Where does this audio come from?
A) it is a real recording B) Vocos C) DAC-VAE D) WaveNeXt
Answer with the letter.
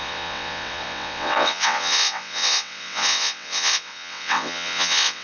D